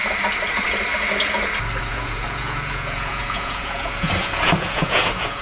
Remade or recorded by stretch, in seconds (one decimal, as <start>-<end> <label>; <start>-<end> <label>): 0.0-1.8 recorded; 1.8-5.4 remade